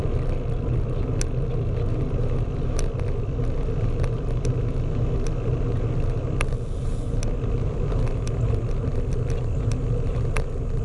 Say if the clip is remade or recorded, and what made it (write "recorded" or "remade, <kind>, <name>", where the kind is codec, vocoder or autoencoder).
recorded